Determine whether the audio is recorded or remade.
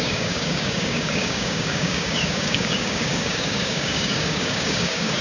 remade